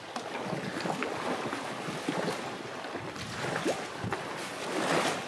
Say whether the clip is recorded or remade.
recorded